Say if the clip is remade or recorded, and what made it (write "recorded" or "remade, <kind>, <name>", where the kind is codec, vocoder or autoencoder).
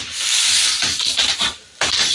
recorded